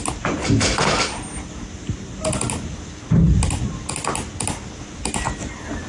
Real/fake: real